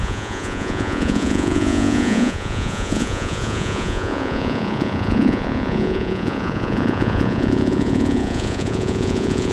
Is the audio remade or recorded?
remade